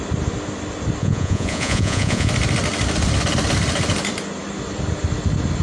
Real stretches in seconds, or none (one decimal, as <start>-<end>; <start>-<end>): 0.0-1.0; 2.3-5.6